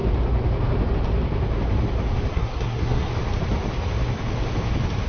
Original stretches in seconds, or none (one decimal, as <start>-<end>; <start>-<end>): 0.0-2.3; 3.1-5.1